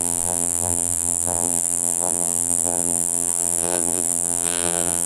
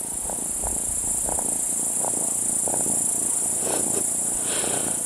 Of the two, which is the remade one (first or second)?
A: first